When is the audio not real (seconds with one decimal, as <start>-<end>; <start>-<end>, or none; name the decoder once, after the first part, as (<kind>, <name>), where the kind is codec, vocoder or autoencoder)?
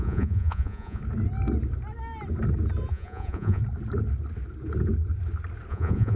0.0-1.0 (vocoder, Vocos); 2.9-3.6; 5.7-6.2